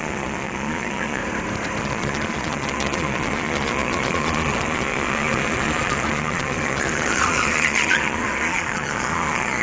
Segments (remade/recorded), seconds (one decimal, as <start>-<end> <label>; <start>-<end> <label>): 0.0-1.2 remade; 1.2-1.8 recorded; 1.8-9.6 remade